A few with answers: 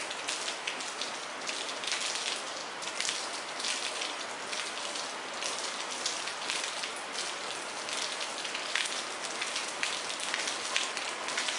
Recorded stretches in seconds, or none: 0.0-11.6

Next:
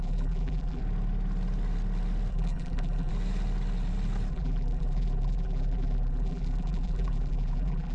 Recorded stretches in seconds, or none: 0.8-2.3; 3.1-4.3